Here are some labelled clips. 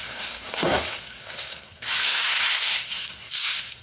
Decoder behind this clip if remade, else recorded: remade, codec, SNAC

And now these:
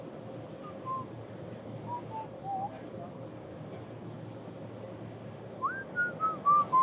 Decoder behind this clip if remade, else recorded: recorded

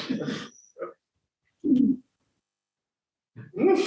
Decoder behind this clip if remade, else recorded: recorded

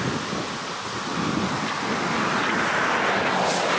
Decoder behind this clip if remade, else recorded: recorded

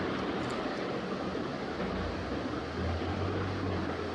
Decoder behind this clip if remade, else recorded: recorded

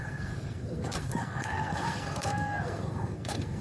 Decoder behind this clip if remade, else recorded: remade, codec, SNAC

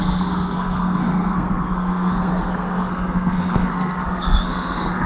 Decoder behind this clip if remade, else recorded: remade, codec, SNAC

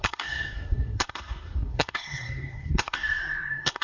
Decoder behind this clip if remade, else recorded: remade, codec, SNAC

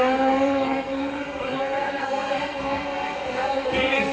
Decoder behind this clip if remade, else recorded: remade, codec, SNAC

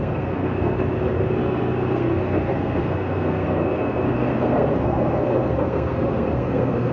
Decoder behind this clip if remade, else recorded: remade, codec, SNAC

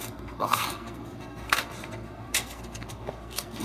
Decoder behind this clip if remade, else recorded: remade, codec, SNAC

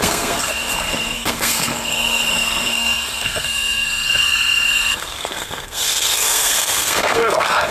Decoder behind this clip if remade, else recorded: remade, codec, SNAC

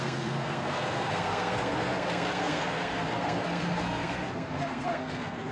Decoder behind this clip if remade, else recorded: remade, codec, SNAC